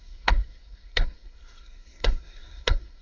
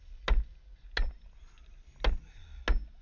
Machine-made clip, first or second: first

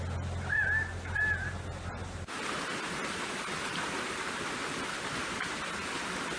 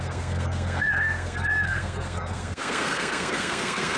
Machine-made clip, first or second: second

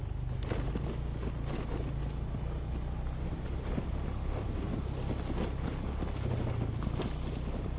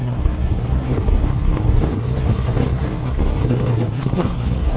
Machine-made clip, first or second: second